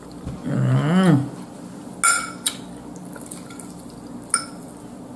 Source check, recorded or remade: recorded